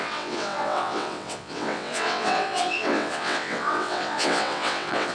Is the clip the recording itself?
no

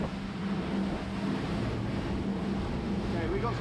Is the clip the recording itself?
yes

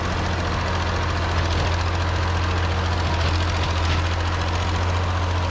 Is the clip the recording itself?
yes